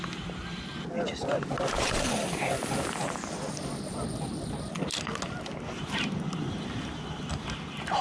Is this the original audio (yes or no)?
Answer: yes